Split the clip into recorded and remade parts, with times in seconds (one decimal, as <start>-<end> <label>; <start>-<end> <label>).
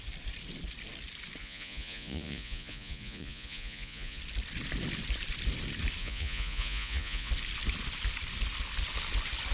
0.0-1.4 recorded; 1.4-4.2 remade; 4.2-6.0 recorded; 6.0-7.3 remade; 7.3-9.5 recorded